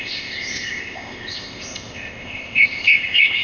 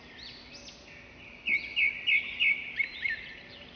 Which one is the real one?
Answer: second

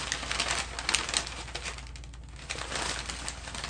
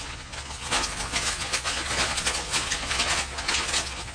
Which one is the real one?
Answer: first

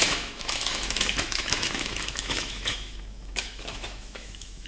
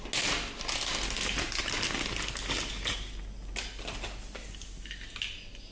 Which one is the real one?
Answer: second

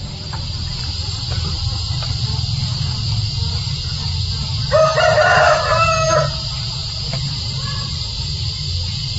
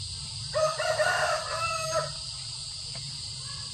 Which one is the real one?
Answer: first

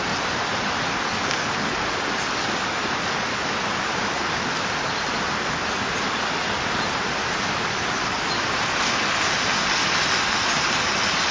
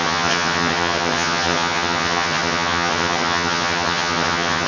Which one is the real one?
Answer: first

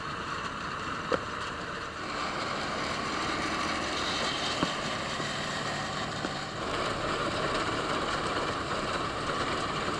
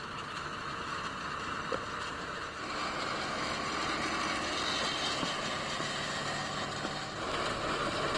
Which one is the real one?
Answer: second